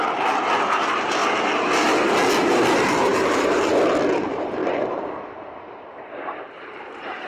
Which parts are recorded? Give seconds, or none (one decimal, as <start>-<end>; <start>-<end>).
0.0-3.1; 3.7-4.6